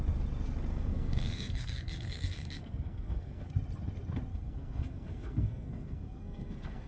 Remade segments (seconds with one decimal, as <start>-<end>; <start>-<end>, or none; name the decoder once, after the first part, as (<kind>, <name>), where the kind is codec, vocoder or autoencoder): 0.7-3.5 (codec, SNAC); 4.3-6.9